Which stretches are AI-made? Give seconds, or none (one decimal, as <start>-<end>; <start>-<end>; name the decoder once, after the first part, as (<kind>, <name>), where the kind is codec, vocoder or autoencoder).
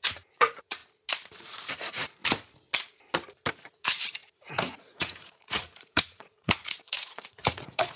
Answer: 0.0-0.8 (vocoder, Vocos); 1.3-2.2; 3.5-8.0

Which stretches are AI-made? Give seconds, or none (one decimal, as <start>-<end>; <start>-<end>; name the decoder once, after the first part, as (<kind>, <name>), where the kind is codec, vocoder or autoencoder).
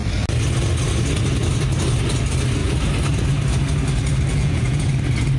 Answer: 4.3-4.9 (vocoder, Vocos)